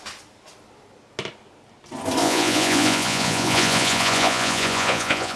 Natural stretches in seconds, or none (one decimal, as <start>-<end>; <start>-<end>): 0.0-2.2